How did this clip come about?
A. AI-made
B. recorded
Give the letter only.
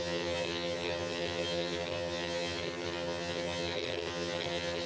A